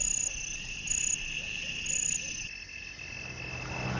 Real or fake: real